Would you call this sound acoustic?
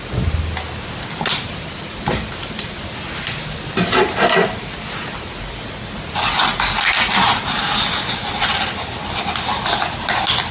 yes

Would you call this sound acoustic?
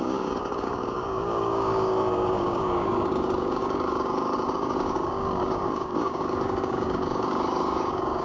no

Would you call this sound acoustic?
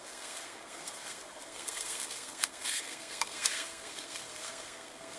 no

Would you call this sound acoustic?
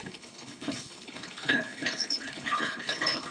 no